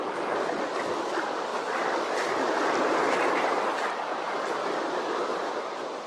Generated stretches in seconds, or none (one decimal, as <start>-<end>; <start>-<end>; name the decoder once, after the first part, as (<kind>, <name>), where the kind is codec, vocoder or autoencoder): none